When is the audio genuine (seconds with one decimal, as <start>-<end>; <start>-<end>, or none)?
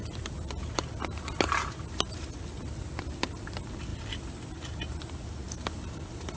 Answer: 0.0-6.4